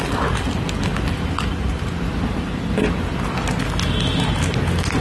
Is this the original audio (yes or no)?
yes